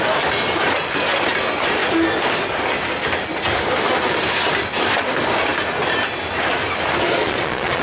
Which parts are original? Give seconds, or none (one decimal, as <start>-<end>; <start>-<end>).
0.0-7.1